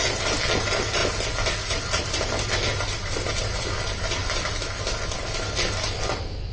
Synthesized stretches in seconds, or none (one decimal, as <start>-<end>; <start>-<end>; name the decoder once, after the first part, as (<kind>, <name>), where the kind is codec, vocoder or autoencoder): none